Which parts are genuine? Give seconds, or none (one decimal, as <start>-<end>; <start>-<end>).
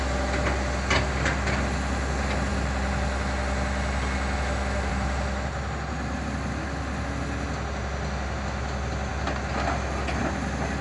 0.0-10.8